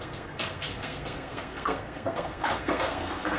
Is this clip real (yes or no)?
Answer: no